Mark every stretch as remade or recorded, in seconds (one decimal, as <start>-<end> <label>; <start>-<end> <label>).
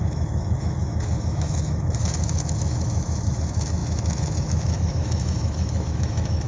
0.0-6.5 remade